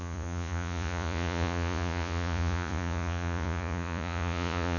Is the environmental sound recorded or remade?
remade